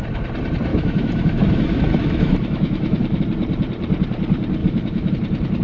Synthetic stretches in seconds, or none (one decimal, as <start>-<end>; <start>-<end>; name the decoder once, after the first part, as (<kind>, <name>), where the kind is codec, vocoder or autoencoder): 0.7-3.2 (autoencoder, DAC-VAE); 4.6-5.1

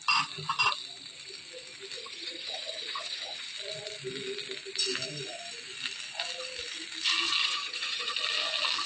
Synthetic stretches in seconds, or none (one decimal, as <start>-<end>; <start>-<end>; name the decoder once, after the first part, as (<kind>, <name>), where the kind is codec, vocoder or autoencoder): 2.0-3.4 (vocoder, HiFi-GAN); 7.4-8.1

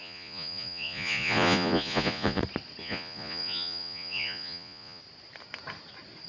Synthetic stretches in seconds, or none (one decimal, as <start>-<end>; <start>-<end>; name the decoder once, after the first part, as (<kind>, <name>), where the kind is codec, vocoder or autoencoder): 0.0-2.4 (vocoder, Vocos); 2.8-5.0

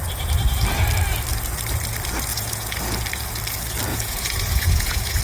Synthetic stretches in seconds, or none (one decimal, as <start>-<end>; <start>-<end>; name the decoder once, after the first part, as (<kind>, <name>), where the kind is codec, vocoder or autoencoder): 2.3-2.8 (vocoder, Vocos); 3.9-5.2